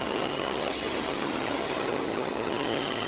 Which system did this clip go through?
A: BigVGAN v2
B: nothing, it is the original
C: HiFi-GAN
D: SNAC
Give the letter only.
C